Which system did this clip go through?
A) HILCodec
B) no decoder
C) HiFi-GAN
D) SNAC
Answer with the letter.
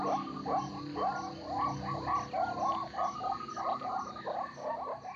B